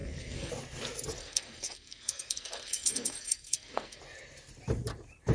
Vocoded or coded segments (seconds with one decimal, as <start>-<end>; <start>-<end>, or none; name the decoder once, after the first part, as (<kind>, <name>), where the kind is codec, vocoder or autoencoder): 0.0-0.5 (codec, SNAC); 1.2-4.0